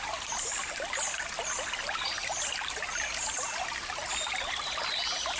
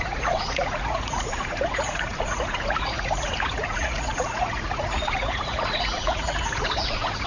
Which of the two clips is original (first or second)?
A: first